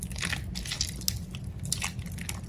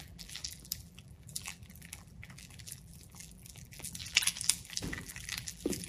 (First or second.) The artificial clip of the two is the second